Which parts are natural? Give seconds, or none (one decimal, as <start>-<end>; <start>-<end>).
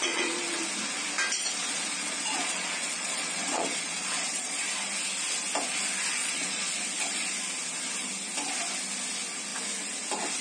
0.6-1.6; 4.6-6.2; 6.7-10.4